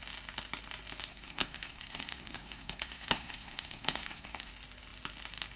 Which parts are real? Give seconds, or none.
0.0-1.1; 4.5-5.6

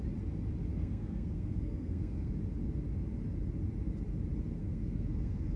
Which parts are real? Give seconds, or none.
0.0-0.7; 2.3-4.6

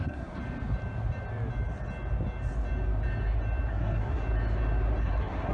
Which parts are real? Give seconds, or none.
0.4-3.7; 4.2-5.0

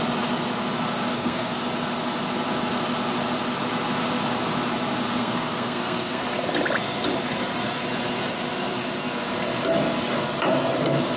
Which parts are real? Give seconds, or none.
0.0-1.1; 1.6-5.2; 6.2-11.2

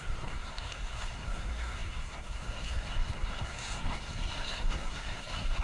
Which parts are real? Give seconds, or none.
none

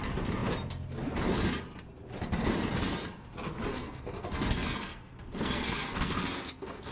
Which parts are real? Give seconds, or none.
0.0-3.7

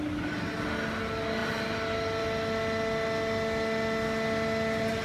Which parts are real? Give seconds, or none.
0.0-5.0

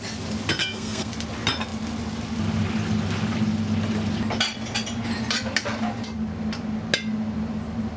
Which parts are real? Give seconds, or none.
0.0-0.6; 1.1-8.0